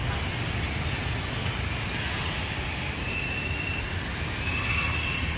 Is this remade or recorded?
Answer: recorded